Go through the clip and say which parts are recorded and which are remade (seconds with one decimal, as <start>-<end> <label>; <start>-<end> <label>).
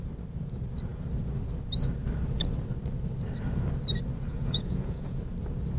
0.0-4.3 recorded; 4.3-5.2 remade; 5.2-5.8 recorded